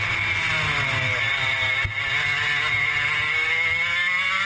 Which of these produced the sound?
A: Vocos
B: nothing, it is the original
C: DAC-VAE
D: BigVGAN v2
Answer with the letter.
B